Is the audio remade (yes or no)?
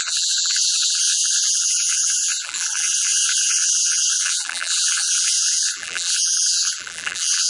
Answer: yes